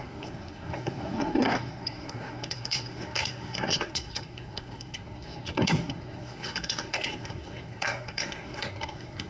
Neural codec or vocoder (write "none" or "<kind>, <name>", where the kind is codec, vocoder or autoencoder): codec, SNAC